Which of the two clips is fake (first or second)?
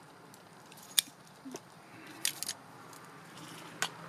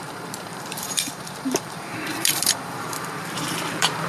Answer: second